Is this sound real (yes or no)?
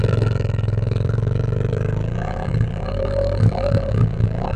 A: no